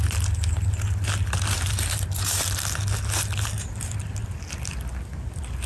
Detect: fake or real real